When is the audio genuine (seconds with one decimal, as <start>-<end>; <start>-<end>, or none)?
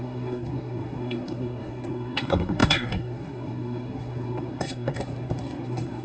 none